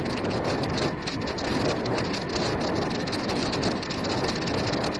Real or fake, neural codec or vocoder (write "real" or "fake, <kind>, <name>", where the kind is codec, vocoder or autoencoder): fake, vocoder, BigVGAN v2